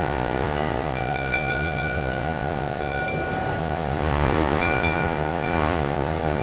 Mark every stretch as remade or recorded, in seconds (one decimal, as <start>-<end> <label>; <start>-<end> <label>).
0.0-3.0 remade; 3.0-3.6 recorded; 3.6-6.4 remade